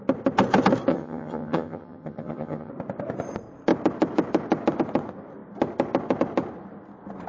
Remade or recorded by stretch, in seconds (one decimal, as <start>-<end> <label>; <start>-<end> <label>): 0.0-0.9 recorded; 0.9-2.7 remade; 2.7-7.3 recorded